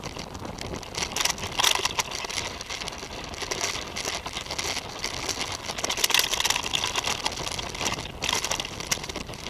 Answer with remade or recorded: recorded